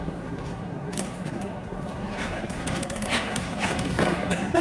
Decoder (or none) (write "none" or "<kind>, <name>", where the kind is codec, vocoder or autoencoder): codec, SNAC